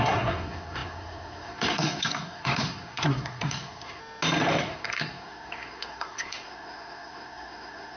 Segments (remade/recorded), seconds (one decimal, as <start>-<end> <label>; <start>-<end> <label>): 0.0-4.0 remade; 4.0-4.6 recorded; 4.6-8.0 remade